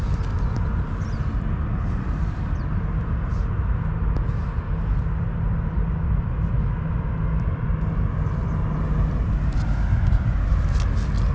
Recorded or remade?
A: recorded